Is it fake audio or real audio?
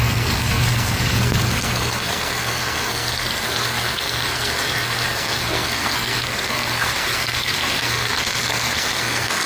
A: fake